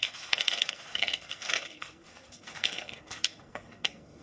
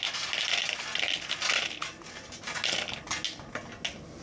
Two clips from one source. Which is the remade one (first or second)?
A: first